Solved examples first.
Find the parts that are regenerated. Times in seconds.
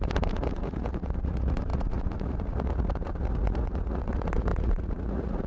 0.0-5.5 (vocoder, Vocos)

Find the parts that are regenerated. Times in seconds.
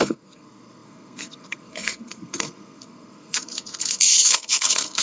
0.0-5.0 (codec, SNAC)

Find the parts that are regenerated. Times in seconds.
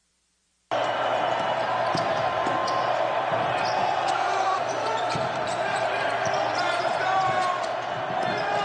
0.0-7.4 (vocoder, BigVGAN v2)